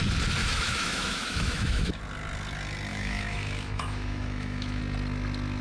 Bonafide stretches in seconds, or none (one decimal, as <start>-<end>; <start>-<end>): 0.0-0.4; 2.0-2.9; 4.8-5.6